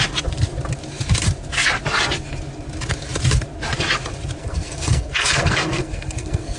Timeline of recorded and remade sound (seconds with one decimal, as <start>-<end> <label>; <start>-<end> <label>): 0.0-4.4 recorded; 4.4-6.6 remade